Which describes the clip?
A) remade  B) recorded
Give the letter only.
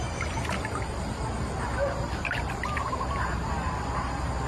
B